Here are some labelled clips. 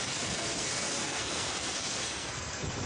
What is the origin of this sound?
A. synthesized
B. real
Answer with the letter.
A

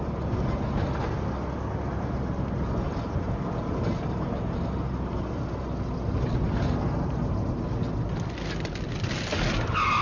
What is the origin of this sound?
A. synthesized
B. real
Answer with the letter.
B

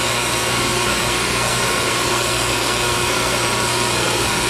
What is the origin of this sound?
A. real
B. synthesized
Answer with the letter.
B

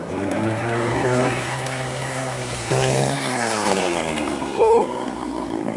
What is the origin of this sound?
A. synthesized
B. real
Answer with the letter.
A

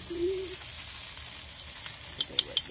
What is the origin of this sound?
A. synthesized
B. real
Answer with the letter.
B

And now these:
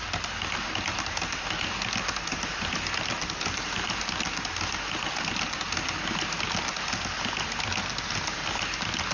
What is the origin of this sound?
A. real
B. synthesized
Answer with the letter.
A